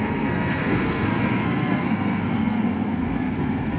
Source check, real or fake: fake